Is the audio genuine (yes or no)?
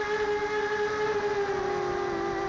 yes